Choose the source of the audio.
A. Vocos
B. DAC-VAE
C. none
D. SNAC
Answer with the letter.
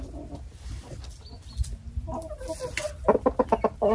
C